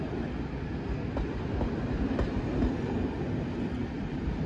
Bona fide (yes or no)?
yes